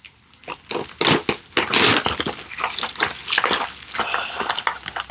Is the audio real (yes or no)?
yes